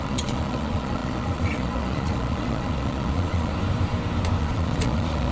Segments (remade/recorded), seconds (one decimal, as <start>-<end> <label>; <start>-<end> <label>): 0.0-3.5 remade; 3.5-4.4 recorded; 4.4-5.3 remade